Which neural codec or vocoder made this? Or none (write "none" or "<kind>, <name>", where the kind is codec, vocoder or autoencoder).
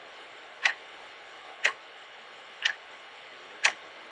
codec, HILCodec